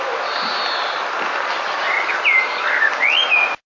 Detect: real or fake real